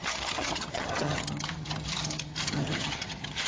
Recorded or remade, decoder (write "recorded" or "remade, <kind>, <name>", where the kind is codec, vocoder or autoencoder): remade, vocoder, HiFi-GAN